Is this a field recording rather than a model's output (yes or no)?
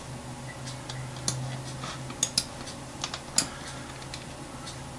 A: yes